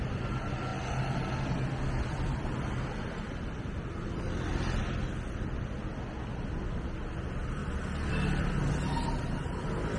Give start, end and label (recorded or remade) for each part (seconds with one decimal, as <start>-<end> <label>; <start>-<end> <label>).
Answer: 0.0-10.0 recorded